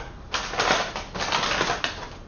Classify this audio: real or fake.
real